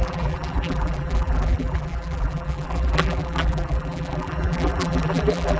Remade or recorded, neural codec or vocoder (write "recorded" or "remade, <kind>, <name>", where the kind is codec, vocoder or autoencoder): remade, vocoder, BigVGAN v2